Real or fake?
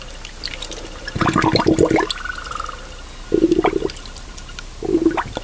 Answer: real